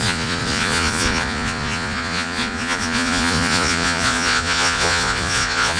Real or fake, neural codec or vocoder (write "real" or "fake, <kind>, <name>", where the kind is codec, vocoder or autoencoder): fake, vocoder, Vocos